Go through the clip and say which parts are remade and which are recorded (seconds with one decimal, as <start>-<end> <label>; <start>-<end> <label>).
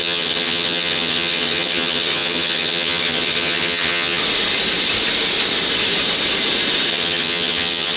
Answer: 0.0-4.2 remade; 4.2-6.9 recorded; 6.9-8.0 remade